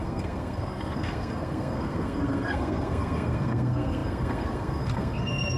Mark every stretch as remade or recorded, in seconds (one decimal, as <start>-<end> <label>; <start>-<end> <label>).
0.0-5.6 remade